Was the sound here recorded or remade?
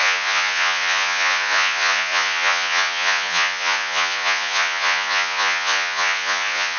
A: remade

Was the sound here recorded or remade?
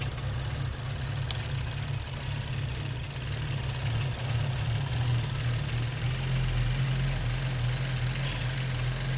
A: recorded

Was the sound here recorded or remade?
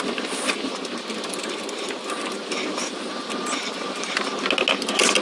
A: recorded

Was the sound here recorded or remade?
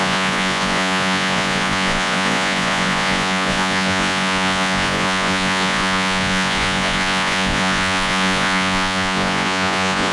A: remade